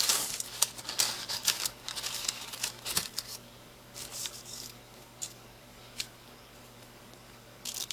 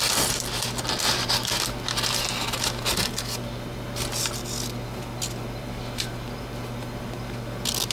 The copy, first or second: first